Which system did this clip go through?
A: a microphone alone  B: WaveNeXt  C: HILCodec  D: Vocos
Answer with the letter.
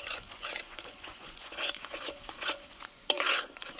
D